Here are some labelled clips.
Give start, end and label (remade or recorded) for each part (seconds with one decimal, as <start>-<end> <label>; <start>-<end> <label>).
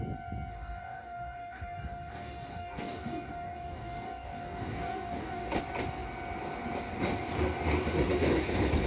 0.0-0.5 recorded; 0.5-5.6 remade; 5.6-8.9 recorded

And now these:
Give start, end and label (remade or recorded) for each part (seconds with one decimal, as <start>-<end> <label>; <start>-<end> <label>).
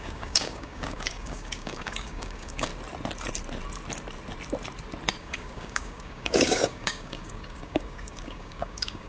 0.0-2.7 remade; 2.7-5.2 recorded; 5.2-9.1 remade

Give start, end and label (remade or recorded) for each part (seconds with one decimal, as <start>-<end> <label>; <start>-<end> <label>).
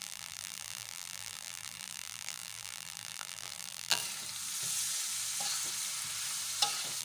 0.0-4.0 remade; 4.0-7.0 recorded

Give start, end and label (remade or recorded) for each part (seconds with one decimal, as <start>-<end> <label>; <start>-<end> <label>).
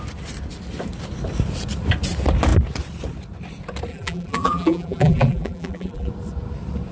0.0-3.9 recorded; 3.9-6.1 remade; 6.1-6.9 recorded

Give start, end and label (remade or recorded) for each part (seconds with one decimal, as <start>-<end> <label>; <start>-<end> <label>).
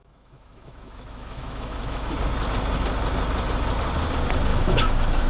0.0-2.1 remade; 2.1-4.5 recorded; 4.5-5.3 remade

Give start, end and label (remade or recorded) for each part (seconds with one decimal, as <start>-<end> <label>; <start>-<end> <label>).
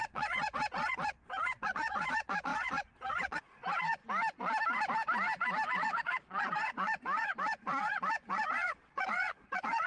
0.0-4.0 remade; 4.0-5.7 recorded; 5.7-9.9 remade